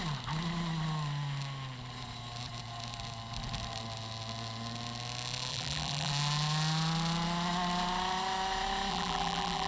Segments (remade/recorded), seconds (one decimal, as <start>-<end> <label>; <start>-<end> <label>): 0.0-5.5 recorded; 5.5-6.1 remade; 6.1-8.9 recorded; 8.9-9.7 remade

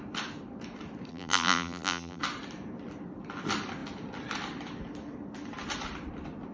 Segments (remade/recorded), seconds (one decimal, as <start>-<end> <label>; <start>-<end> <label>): 0.0-1.1 recorded; 1.1-2.2 remade; 2.2-6.5 recorded

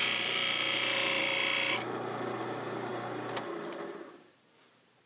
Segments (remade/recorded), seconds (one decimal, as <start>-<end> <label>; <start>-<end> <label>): 0.0-5.1 recorded